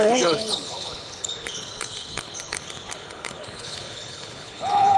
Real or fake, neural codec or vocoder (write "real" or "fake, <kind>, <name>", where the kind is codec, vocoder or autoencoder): fake, codec, HILCodec